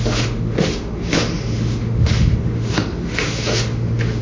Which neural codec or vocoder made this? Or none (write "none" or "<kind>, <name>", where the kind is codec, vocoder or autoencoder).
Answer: autoencoder, DAC-VAE